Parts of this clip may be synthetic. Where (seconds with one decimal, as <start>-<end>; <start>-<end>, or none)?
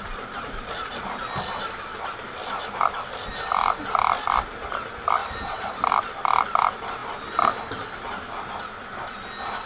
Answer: 3.3-3.8; 5.2-5.9